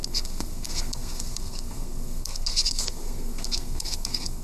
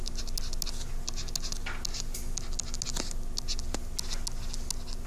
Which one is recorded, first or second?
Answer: second